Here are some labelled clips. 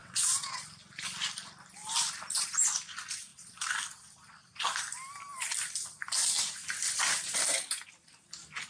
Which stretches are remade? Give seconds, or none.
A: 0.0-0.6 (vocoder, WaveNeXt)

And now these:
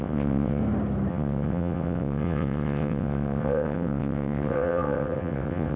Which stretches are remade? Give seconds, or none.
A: 0.0-0.6 (vocoder, WaveNeXt); 1.1-5.8